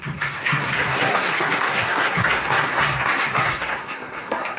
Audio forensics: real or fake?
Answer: fake